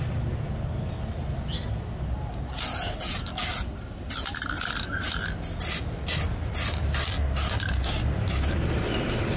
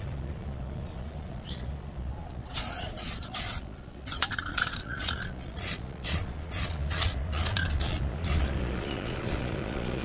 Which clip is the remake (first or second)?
second